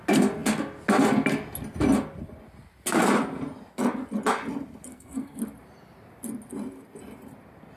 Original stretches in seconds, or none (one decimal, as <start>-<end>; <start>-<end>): 0.0-4.9; 5.4-7.8